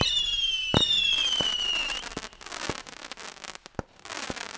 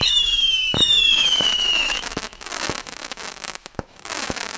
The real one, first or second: first